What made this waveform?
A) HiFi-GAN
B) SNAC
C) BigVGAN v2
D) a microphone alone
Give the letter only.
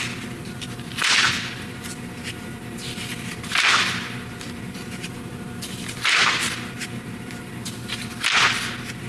C